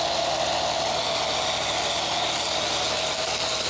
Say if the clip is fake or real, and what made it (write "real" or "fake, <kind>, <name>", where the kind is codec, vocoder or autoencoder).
real